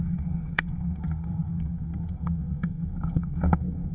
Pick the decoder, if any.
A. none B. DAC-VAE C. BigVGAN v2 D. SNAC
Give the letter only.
D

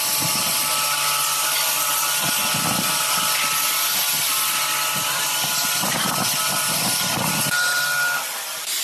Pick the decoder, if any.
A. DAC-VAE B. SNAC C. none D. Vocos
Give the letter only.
C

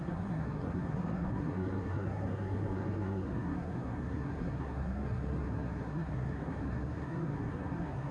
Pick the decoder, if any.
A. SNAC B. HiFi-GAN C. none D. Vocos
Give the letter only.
A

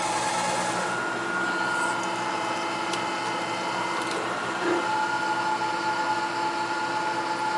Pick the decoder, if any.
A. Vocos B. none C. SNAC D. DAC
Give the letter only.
B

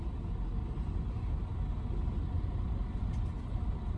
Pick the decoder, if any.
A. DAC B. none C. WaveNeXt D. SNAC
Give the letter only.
B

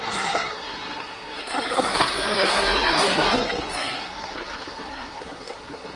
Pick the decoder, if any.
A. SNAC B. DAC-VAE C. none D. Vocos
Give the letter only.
A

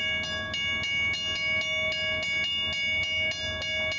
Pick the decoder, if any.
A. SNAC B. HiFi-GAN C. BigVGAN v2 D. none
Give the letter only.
D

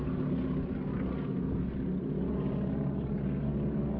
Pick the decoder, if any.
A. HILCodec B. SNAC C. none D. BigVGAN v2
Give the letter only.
C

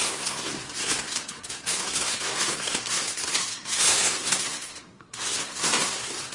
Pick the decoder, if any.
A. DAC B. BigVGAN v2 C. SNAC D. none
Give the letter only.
C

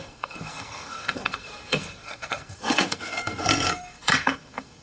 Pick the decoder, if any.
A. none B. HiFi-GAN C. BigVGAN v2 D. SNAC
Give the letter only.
D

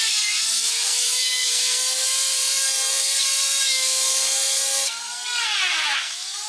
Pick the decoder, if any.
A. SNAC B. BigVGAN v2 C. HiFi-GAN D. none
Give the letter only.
A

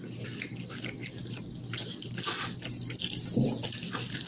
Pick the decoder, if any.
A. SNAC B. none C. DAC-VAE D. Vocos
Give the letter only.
B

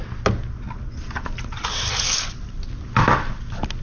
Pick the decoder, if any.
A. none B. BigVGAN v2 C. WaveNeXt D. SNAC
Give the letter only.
A